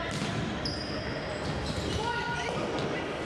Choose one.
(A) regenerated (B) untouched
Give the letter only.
B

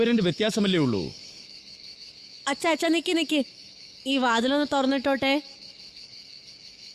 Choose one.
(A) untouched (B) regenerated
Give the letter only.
B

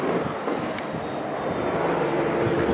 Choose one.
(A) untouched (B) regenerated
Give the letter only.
A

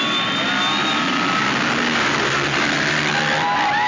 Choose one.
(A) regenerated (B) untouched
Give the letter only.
B